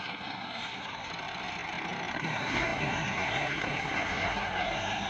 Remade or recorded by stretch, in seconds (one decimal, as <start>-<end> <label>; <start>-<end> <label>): 0.0-1.1 remade; 1.1-2.1 recorded; 2.1-5.1 remade